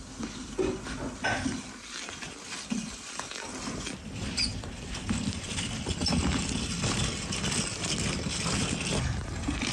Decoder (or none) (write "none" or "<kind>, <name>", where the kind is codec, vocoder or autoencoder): none